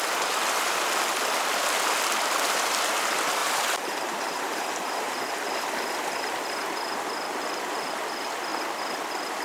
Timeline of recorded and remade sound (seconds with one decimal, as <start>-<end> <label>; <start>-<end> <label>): 0.0-3.4 recorded; 3.4-5.0 remade; 5.0-9.4 recorded